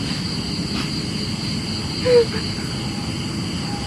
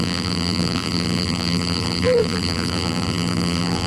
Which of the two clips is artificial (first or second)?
second